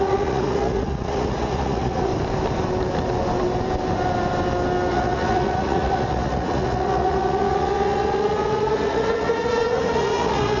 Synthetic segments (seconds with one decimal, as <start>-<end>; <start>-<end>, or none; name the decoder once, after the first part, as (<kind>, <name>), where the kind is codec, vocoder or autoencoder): 0.0-2.1 (vocoder, Vocos); 4.9-10.6